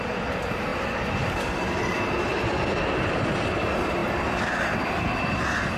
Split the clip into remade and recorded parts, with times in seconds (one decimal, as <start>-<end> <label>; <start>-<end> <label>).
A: 0.0-5.8 recorded